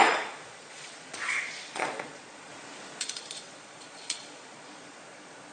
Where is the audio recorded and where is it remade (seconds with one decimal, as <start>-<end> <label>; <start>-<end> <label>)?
0.0-2.5 remade; 2.5-3.0 recorded; 3.0-5.5 remade